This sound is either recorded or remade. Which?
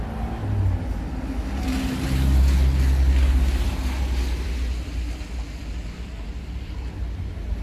recorded